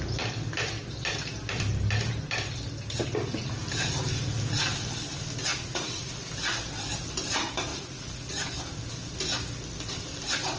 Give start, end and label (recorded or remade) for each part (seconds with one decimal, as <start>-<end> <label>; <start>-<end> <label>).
0.0-5.5 recorded; 5.5-6.1 remade; 6.1-7.7 recorded; 7.7-8.5 remade; 8.5-10.6 recorded